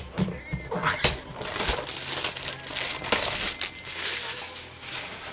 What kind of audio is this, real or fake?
real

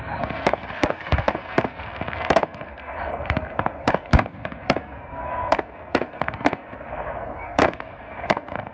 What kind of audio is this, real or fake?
fake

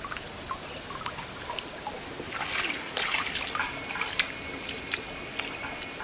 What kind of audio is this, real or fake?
real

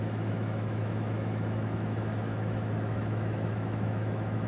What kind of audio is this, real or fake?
fake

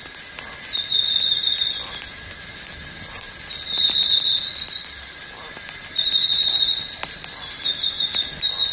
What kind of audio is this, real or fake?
real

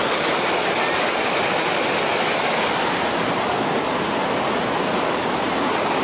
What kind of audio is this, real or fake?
real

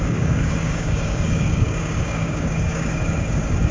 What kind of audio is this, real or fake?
fake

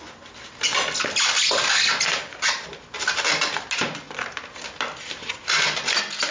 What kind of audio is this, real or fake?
real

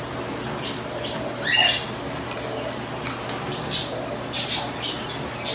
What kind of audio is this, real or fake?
real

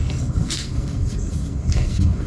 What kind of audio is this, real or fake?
fake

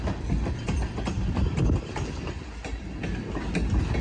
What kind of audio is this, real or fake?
real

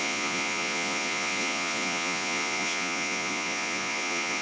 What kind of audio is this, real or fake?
fake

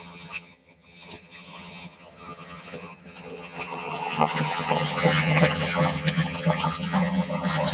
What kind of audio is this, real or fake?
fake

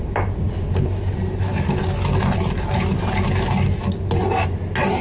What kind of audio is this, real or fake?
real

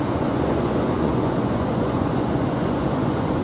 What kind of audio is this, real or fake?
fake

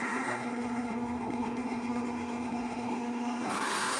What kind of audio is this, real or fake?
fake